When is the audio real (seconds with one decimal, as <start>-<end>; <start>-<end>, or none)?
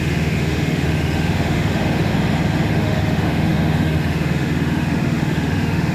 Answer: 2.1-2.7